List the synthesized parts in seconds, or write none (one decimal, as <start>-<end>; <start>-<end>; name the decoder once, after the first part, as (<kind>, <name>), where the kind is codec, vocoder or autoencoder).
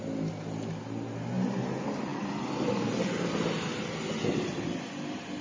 none